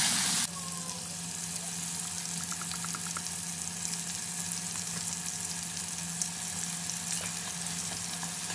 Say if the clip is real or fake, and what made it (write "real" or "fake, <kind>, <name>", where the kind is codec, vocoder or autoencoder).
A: real